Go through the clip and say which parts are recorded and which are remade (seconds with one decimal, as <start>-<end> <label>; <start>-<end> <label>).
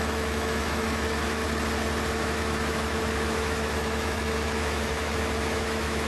0.0-1.4 remade; 1.4-2.1 recorded; 2.1-6.1 remade